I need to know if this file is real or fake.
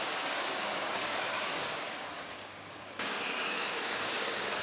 fake